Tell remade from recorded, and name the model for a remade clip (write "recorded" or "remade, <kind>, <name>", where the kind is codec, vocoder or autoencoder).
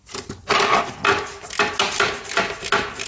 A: recorded